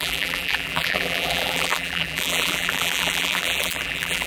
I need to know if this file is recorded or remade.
remade